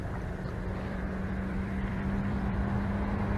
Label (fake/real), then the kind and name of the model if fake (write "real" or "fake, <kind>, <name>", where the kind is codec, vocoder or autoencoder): fake, vocoder, BigVGAN v2